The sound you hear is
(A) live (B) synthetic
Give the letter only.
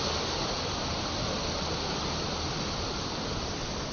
A